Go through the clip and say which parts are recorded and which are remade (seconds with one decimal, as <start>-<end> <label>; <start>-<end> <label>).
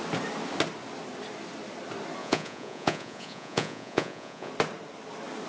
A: 0.0-2.2 recorded; 2.2-4.5 remade; 4.5-5.5 recorded